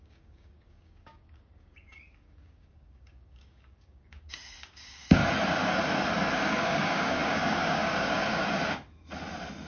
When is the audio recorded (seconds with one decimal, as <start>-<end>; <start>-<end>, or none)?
5.2-6.3; 8.6-9.7